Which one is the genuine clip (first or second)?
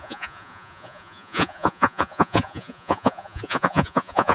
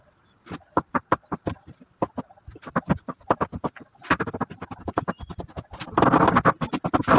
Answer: second